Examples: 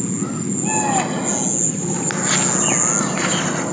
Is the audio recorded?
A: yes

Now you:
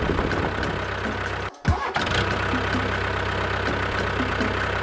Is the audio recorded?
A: yes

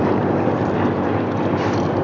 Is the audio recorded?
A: yes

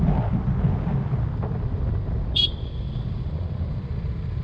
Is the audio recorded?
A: yes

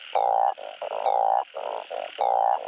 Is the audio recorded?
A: yes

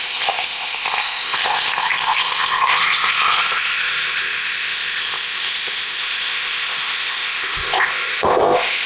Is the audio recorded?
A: no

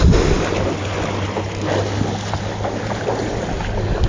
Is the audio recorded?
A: yes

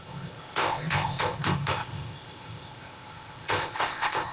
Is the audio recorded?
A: no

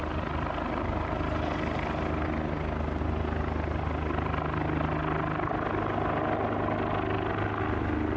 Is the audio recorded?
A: yes